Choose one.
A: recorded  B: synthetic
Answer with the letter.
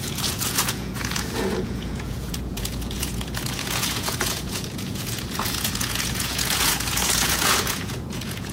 B